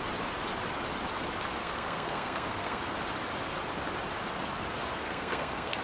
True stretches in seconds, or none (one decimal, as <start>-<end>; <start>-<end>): 0.0-1.6; 2.8-4.9